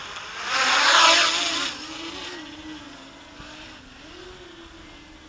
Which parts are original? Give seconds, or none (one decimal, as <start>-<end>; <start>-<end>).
0.0-1.5; 2.1-5.3